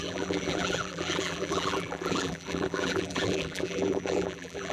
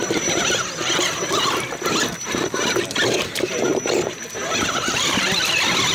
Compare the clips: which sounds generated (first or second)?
first